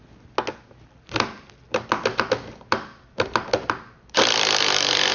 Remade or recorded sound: recorded